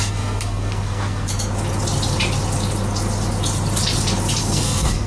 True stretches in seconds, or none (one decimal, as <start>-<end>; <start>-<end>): 1.3-4.4

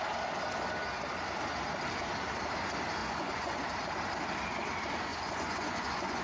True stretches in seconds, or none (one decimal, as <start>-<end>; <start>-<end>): 0.0-3.0; 3.6-5.1

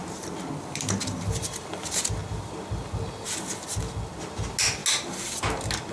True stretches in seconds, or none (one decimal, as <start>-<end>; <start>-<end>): 0.0-5.9

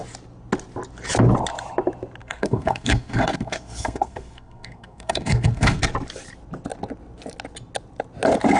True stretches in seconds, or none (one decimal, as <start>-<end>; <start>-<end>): 0.0-2.2; 5.8-8.6

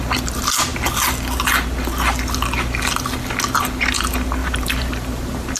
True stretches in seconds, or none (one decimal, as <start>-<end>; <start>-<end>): 0.0-4.4

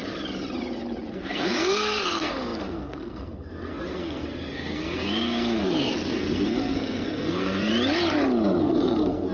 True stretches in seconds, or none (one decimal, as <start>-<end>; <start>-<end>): 0.0-1.1; 7.7-8.6